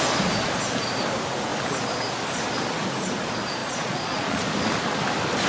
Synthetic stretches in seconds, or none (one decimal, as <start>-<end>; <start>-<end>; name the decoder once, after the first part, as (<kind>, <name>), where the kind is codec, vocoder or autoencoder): 3.6-4.4 (vocoder, Vocos)